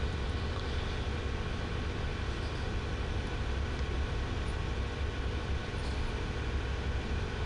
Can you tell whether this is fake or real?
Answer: real